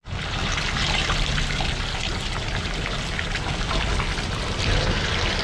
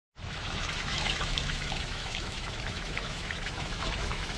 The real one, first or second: first